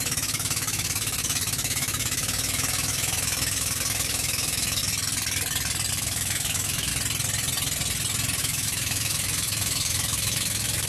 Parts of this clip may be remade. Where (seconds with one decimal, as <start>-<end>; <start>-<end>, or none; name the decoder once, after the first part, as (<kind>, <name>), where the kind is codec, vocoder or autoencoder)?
0.0-4.8 (autoencoder, DAC-VAE); 5.9-6.9; 8.4-10.9